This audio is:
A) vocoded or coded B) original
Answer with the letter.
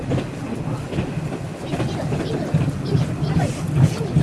B